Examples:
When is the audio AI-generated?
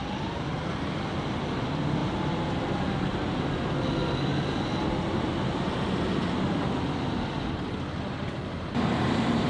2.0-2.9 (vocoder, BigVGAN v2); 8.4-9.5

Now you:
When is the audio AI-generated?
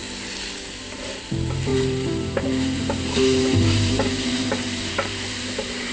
0.8-5.9 (vocoder, BigVGAN v2)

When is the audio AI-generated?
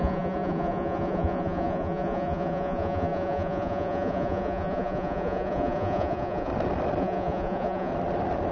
0.0-6.5 (vocoder, Vocos); 7.0-7.9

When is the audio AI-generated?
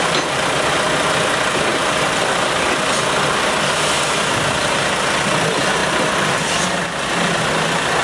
none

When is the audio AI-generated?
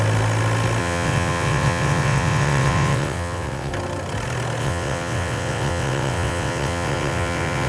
0.8-3.7 (vocoder, WaveNeXt); 4.6-7.7